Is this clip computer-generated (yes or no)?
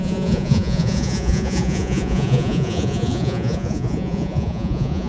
yes